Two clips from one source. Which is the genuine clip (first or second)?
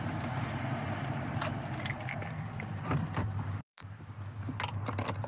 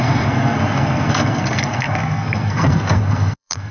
first